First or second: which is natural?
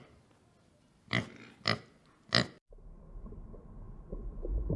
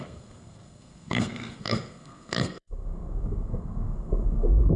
first